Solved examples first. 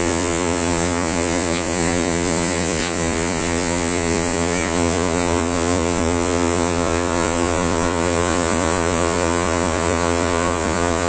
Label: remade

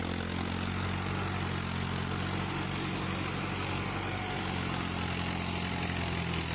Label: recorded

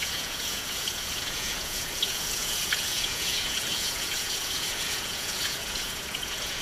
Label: remade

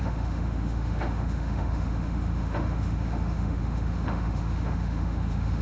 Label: remade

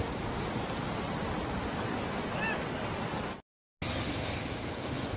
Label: recorded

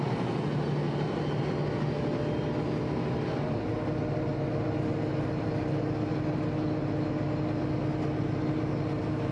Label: recorded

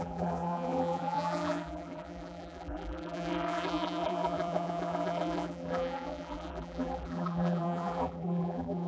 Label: remade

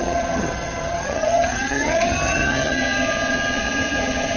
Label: remade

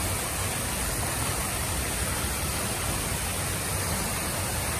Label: recorded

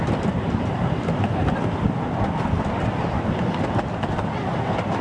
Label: recorded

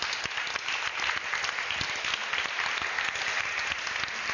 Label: recorded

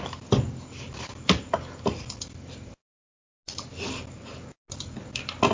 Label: recorded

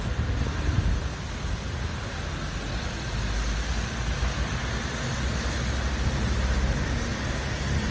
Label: recorded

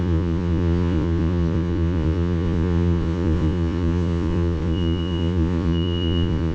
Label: remade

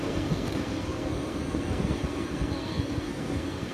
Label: remade